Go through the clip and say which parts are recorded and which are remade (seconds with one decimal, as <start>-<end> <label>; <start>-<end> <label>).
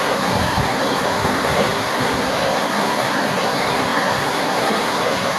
0.0-5.4 remade